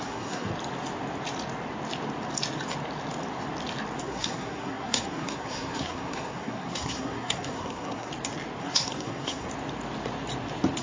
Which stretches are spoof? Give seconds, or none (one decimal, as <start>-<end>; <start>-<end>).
0.0-0.5; 4.0-8.1; 8.6-9.5